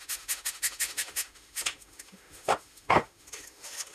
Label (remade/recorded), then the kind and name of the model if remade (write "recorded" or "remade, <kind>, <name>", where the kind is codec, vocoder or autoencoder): remade, autoencoder, DAC-VAE